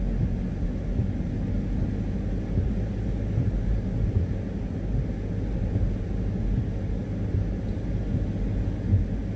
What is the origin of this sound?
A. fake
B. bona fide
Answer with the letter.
B